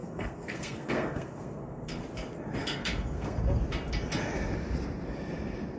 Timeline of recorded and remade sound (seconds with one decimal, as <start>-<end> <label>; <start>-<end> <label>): 0.0-2.0 remade; 2.0-2.6 recorded; 2.6-3.4 remade; 3.4-5.8 recorded